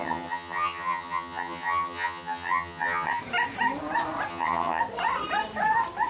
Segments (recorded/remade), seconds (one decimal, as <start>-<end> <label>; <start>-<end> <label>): 0.0-3.2 remade; 3.2-4.3 recorded; 4.3-4.8 remade; 4.8-6.1 recorded